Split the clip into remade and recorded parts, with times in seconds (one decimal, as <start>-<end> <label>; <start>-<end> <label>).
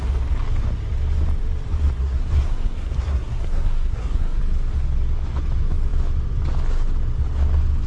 0.0-2.0 recorded; 2.0-4.4 remade; 4.4-7.9 recorded